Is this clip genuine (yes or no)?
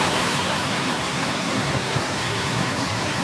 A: no